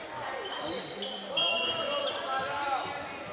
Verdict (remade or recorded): recorded